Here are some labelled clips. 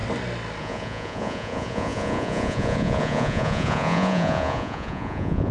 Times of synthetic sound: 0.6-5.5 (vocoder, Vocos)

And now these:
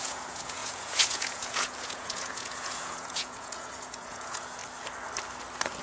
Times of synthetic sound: 0.0-4.6 (vocoder, Vocos)

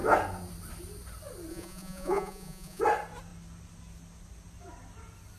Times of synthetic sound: 1.5-2.8 (vocoder, Vocos)

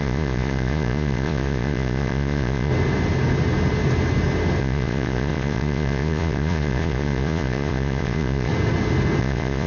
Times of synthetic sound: 0.0-2.7 (vocoder, Vocos); 4.6-8.5; 9.2-9.7